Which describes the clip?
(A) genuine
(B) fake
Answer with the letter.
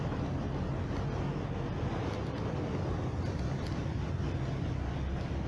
A